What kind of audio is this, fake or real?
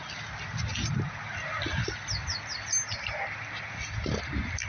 real